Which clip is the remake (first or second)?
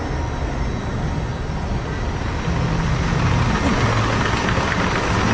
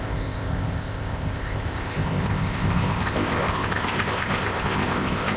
second